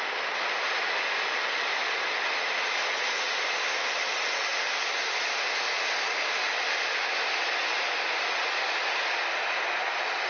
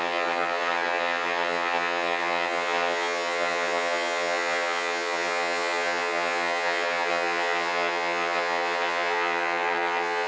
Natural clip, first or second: first